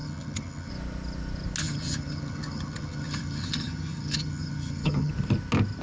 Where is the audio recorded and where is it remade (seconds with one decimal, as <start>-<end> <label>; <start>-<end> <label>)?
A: 0.0-0.7 remade; 0.7-1.6 recorded; 1.6-5.1 remade; 5.1-5.8 recorded